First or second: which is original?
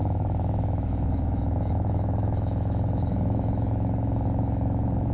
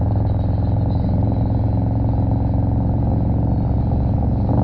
second